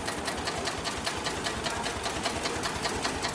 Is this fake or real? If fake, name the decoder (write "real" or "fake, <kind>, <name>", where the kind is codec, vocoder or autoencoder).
real